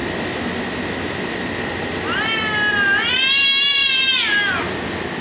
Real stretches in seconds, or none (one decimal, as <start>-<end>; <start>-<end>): 0.0-5.2